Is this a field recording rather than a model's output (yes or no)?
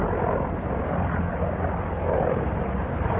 yes